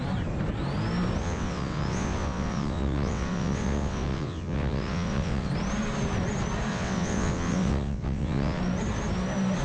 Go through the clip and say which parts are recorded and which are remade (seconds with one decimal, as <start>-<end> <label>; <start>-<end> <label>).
0.0-1.2 recorded; 1.2-5.5 remade; 5.5-6.7 recorded; 6.7-8.6 remade; 8.6-9.6 recorded